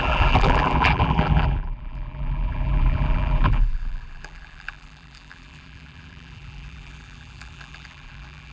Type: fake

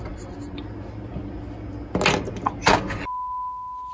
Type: real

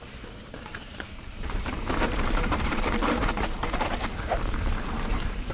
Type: fake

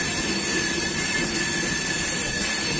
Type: real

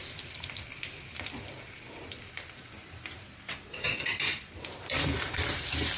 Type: fake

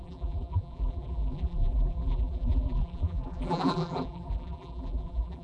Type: fake